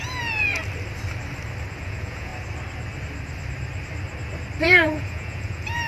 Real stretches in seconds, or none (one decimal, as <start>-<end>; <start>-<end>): 0.6-1.8; 2.3-4.6